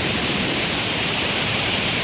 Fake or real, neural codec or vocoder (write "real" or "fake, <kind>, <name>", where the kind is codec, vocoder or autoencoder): fake, vocoder, BigVGAN v2